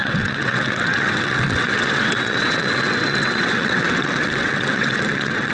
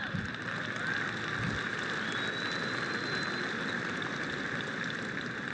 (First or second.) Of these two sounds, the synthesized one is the first